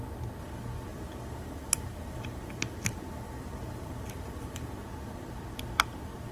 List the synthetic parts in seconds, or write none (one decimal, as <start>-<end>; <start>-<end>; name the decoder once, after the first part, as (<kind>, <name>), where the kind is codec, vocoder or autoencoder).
0.9-4.7 (vocoder, BigVGAN v2)